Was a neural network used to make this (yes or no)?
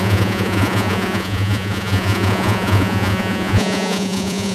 yes